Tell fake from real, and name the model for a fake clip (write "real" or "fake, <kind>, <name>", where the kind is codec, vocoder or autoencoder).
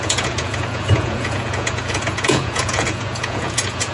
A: fake, vocoder, Vocos